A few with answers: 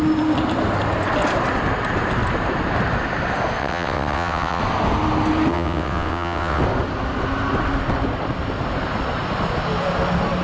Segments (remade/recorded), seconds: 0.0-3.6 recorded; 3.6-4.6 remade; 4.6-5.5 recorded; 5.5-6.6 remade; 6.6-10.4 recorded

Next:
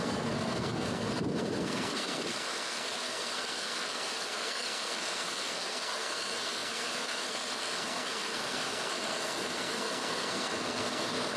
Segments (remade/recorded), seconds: 0.0-11.4 remade

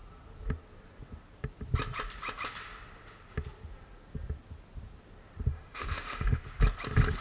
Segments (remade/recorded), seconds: 0.0-5.5 recorded; 5.5-6.4 remade; 6.4-7.2 recorded

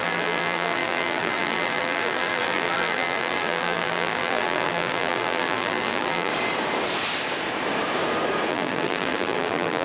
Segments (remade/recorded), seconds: 0.0-6.3 remade; 6.3-8.5 recorded; 8.5-9.8 remade